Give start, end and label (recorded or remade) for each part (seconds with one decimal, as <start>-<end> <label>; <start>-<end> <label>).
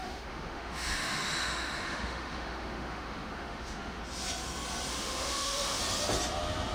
0.0-4.0 remade; 4.0-4.9 recorded; 4.9-5.8 remade; 5.8-6.7 recorded